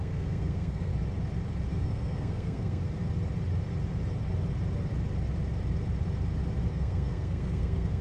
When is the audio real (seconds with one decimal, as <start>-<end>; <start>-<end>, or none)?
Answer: 0.9-1.7; 2.8-6.7